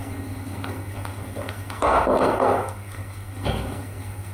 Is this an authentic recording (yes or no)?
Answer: no